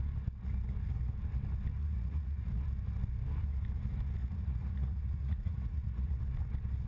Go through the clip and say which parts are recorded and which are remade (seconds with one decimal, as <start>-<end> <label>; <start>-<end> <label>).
0.0-1.8 recorded; 1.8-2.6 remade; 2.6-4.2 recorded; 4.2-6.2 remade; 6.2-6.9 recorded